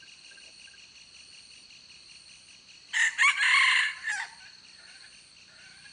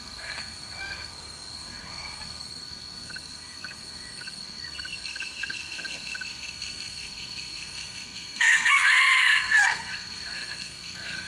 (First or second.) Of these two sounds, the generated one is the second